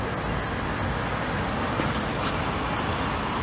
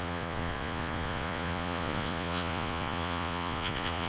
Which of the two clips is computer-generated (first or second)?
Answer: second